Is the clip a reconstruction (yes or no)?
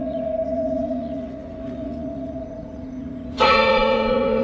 yes